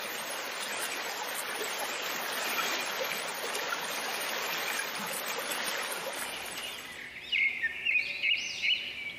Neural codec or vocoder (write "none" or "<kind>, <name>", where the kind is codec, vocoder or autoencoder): none